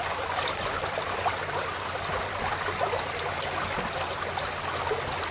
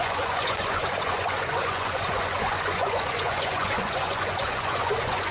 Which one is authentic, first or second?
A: first